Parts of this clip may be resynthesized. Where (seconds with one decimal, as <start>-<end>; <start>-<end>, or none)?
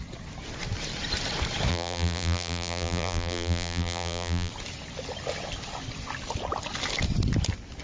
1.7-4.5